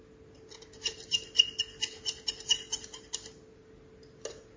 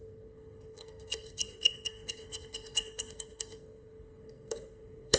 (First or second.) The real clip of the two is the first